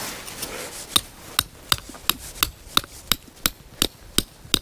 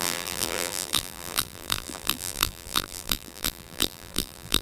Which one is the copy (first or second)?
second